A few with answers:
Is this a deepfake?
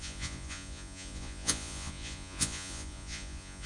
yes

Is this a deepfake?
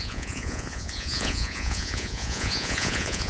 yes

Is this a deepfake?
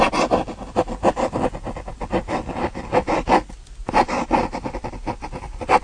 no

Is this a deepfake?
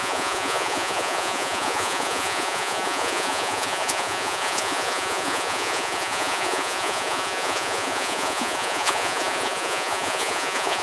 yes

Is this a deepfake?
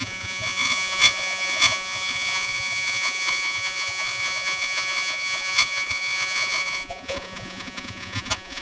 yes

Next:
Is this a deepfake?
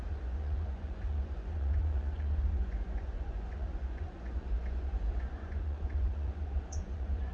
yes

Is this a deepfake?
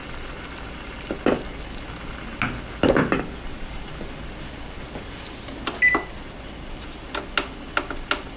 no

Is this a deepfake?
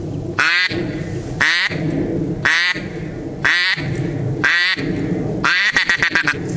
no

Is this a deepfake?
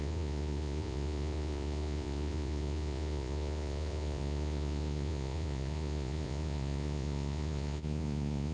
yes